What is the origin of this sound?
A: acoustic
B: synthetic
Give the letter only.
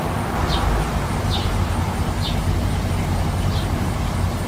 A